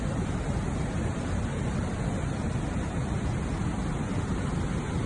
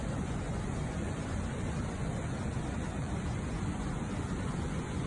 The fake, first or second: second